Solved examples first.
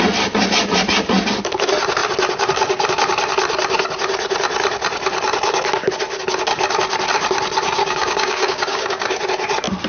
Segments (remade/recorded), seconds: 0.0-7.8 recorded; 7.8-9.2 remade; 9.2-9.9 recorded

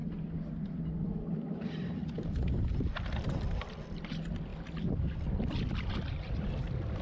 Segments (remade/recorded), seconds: 0.0-7.0 recorded

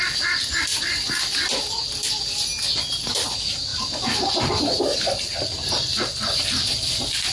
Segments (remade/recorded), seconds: 0.0-3.7 recorded; 3.7-4.8 remade; 4.8-7.3 recorded

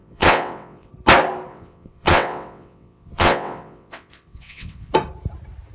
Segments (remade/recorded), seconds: 0.0-0.9 remade; 0.9-1.5 recorded; 1.5-4.9 remade; 4.9-5.7 recorded

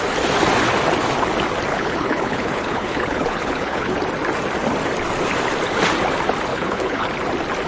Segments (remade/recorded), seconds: 0.0-1.7 recorded; 1.7-4.0 remade; 4.0-6.5 recorded; 6.5-7.1 remade; 7.1-7.7 recorded